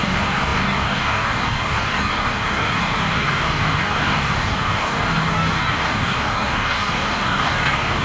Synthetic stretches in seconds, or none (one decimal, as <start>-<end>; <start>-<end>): 0.0-8.0